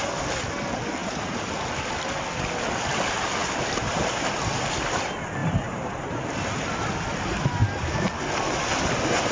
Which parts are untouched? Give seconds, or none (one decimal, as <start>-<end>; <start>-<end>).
0.0-1.0; 1.5-5.4; 6.2-9.3